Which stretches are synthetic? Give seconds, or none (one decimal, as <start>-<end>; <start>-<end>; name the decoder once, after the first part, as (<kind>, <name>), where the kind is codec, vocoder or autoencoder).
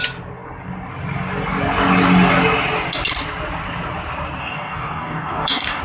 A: 4.4-5.8 (codec, DAC)